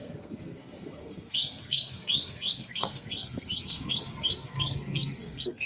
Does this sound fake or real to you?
fake